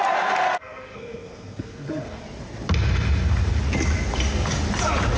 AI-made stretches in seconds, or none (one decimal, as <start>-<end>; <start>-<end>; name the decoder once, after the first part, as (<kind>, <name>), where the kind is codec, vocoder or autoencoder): 0.6-2.2 (codec, SNAC)